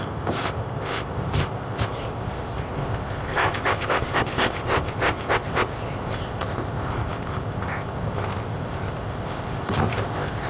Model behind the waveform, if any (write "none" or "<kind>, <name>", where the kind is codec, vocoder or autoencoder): codec, ZipCodec